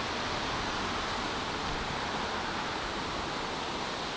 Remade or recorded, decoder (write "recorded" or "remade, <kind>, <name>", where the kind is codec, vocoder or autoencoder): recorded